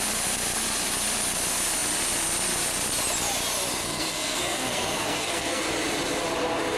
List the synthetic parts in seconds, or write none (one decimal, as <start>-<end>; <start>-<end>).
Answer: 3.8-5.6